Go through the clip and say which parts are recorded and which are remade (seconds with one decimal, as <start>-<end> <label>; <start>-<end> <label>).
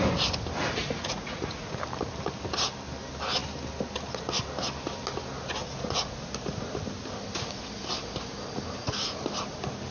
0.0-0.8 recorded; 0.8-1.8 remade; 1.8-5.6 recorded; 5.6-6.3 remade; 6.3-9.9 recorded